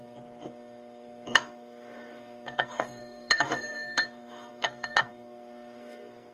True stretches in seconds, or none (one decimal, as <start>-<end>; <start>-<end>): none

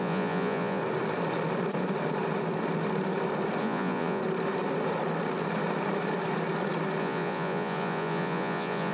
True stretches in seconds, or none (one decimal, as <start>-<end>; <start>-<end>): 0.8-3.6; 4.2-7.0